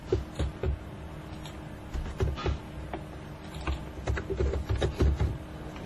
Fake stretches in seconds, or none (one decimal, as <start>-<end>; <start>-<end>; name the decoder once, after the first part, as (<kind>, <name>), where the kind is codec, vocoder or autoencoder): 0.6-1.1 (vocoder, Vocos)